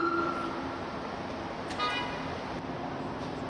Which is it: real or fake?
real